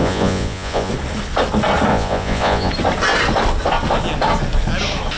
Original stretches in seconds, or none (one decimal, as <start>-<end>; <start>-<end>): 0.9-1.9; 2.7-5.2